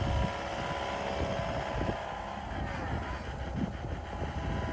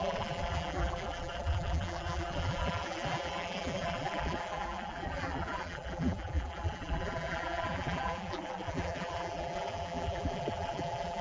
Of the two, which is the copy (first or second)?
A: second